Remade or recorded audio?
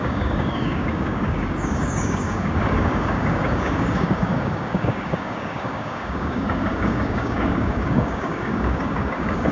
remade